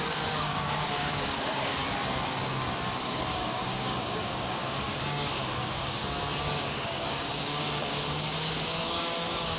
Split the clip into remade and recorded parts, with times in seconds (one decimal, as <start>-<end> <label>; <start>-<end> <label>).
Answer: 0.0-1.7 remade; 1.7-3.2 recorded; 3.2-6.0 remade; 6.0-6.6 recorded; 6.6-9.6 remade